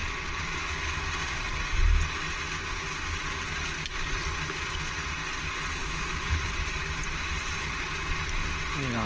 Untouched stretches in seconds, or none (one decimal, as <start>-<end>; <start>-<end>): 0.6-5.8; 8.2-9.1